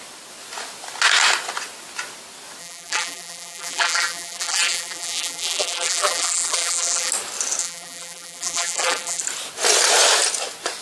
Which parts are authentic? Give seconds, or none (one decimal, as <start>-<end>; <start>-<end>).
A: 0.0-2.6; 7.1-7.6; 9.2-10.8